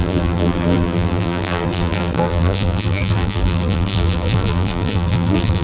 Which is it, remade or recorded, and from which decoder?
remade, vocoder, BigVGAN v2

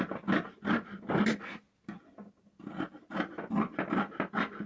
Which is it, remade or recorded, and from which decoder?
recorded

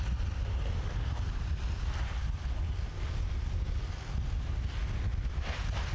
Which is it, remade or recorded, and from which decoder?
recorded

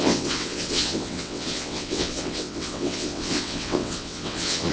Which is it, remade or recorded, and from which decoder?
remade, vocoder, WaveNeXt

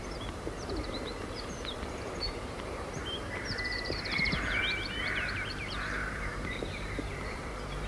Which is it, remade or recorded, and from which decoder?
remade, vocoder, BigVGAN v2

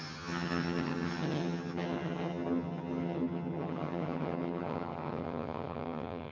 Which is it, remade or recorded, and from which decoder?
remade, vocoder, HiFi-GAN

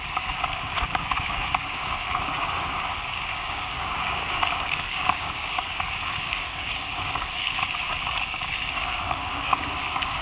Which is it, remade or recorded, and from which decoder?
remade, codec, DAC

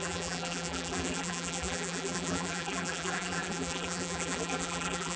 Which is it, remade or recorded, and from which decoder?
remade, vocoder, BigVGAN v2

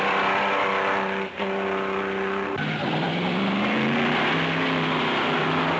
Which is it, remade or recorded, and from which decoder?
recorded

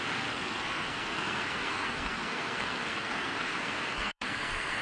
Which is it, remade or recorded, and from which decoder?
remade, codec, SNAC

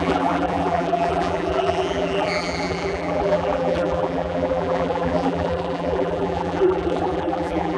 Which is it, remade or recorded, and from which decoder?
remade, vocoder, BigVGAN v2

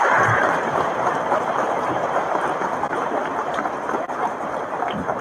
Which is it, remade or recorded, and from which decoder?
remade, vocoder, BigVGAN v2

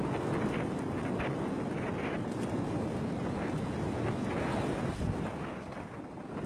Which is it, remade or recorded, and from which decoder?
recorded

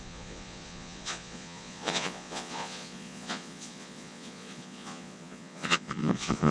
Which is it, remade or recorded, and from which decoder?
remade, vocoder, Vocos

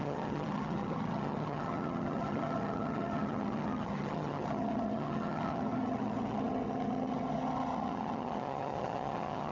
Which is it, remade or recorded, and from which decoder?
remade, vocoder, HiFi-GAN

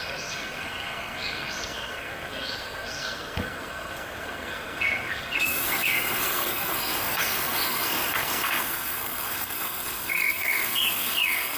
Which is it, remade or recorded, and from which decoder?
remade, codec, SNAC